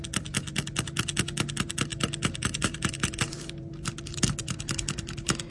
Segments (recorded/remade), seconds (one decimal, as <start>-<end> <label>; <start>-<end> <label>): 0.0-1.9 recorded; 1.9-5.5 remade